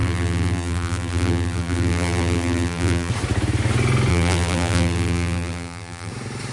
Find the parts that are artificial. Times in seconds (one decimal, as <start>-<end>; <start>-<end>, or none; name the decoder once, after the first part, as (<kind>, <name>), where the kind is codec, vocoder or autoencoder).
0.0-3.1 (vocoder, BigVGAN v2); 4.1-6.1